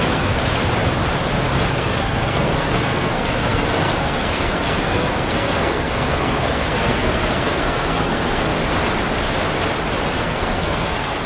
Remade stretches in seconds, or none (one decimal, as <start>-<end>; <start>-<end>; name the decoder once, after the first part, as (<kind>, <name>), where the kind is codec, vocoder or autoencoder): 0.0-0.4 (codec, SNAC); 1.7-8.5; 10.2-11.3